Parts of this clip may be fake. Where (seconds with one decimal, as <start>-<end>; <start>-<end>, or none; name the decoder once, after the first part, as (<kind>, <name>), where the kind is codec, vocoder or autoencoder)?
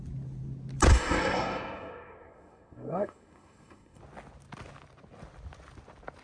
0.9-4.0 (codec, SNAC)